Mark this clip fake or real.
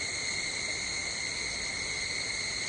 real